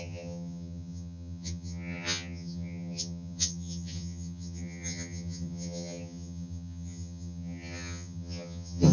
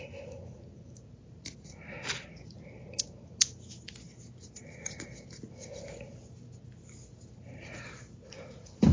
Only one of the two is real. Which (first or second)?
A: second